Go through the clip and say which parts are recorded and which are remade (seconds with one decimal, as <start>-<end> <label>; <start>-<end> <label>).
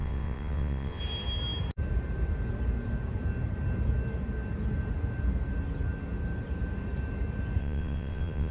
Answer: 0.0-1.0 remade; 1.0-7.6 recorded; 7.6-8.5 remade